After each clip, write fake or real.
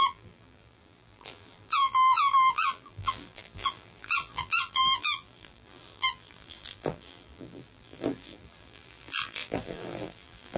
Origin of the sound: fake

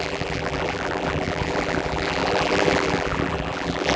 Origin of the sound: fake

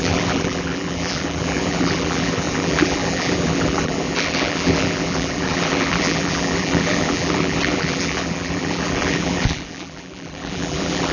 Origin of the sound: fake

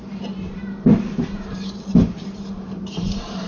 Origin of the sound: fake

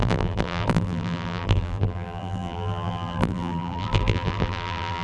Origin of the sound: fake